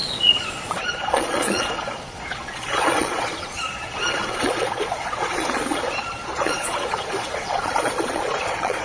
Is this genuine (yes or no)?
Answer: no